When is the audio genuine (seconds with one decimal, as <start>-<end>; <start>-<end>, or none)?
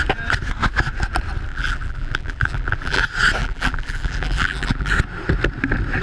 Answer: 0.0-1.5; 3.0-3.4; 4.9-6.0